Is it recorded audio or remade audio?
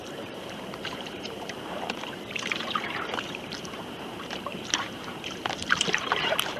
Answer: remade